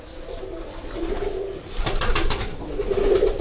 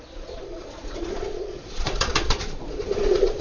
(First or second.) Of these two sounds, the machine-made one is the second